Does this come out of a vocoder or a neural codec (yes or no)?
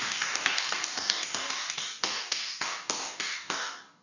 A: yes